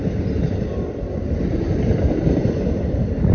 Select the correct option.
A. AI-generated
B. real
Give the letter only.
B